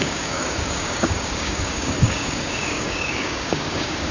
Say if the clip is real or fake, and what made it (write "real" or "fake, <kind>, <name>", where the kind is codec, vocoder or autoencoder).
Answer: fake, codec, DAC